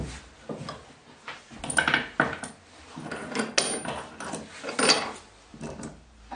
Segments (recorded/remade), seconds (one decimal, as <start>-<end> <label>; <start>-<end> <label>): 0.0-5.5 recorded; 5.5-6.4 remade